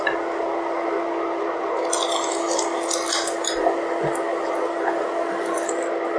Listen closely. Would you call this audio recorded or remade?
recorded